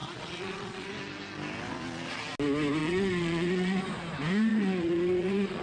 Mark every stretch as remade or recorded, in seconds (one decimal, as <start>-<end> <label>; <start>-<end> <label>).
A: 0.0-0.9 remade; 0.9-2.8 recorded; 2.8-3.8 remade; 3.8-4.5 recorded; 4.5-5.6 remade